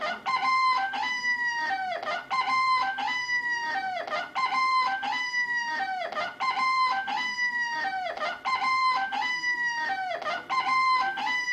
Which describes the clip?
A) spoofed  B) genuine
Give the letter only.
B